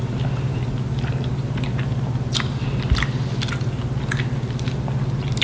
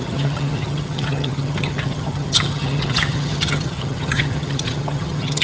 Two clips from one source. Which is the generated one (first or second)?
second